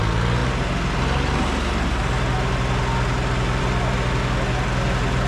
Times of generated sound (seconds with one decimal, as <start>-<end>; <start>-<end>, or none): none

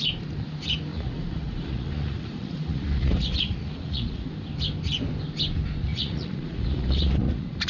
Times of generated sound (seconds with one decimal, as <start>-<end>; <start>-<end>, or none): 0.9-4.3; 5.9-7.7

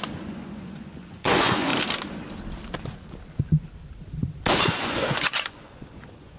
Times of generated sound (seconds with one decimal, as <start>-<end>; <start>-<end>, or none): 0.0-1.7; 4.6-6.4

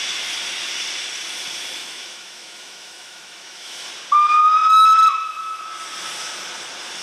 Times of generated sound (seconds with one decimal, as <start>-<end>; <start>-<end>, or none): 1.8-3.9

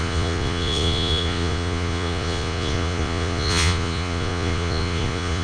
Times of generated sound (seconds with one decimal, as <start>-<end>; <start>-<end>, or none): 0.0-5.4

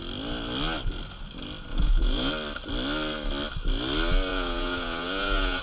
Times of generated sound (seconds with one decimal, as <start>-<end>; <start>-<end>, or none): 1.7-2.3; 4.3-5.6